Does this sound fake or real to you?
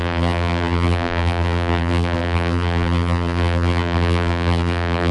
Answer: fake